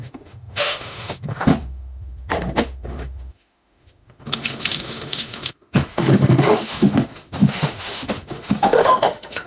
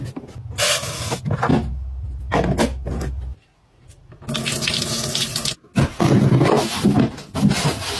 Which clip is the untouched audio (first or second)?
second